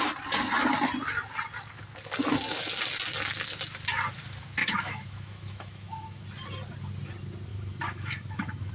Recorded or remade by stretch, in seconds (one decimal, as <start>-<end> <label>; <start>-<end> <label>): 0.0-4.6 recorded; 4.6-6.2 remade; 6.2-7.5 recorded; 7.5-8.7 remade